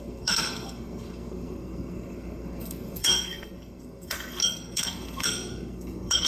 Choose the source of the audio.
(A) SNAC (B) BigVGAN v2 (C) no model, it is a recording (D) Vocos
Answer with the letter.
A